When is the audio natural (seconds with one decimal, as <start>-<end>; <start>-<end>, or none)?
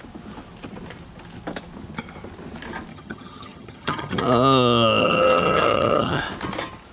0.0-2.9; 4.2-5.0; 6.2-6.9